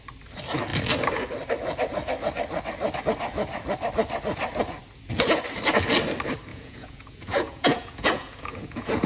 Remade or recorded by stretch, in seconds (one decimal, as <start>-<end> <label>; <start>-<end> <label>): 0.0-6.5 recorded; 6.5-9.1 remade